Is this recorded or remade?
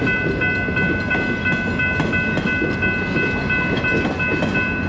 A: recorded